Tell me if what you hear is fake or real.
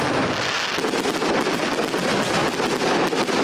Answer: real